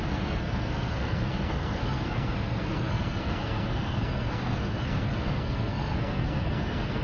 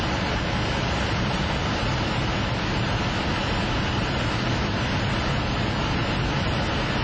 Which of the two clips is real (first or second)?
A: second